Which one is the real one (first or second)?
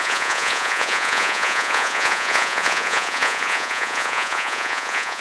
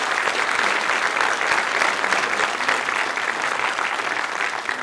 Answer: second